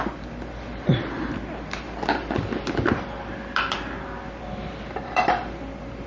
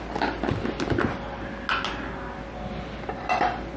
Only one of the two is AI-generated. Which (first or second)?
first